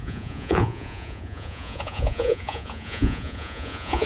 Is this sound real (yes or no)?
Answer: no